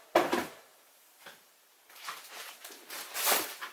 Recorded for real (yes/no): no